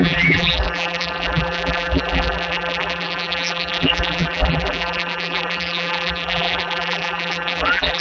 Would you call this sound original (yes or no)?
no